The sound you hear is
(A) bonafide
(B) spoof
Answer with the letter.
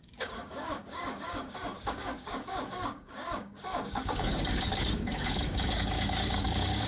B